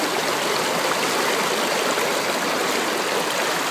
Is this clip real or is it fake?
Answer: real